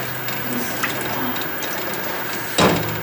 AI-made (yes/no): no